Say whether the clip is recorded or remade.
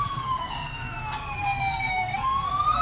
remade